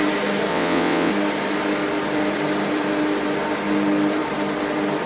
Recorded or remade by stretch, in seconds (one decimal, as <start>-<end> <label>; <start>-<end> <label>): 0.0-0.5 recorded; 0.5-1.1 remade; 1.1-5.1 recorded